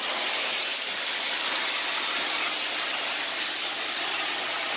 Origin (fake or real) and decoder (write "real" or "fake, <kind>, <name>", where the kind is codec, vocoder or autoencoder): real